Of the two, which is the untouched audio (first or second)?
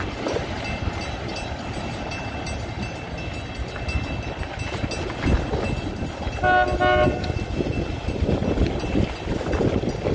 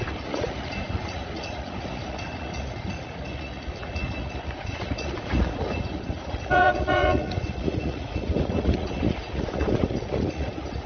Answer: first